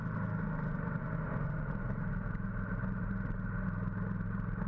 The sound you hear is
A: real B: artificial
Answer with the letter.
A